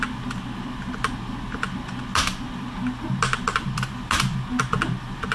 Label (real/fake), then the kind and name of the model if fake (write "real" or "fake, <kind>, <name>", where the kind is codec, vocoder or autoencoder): real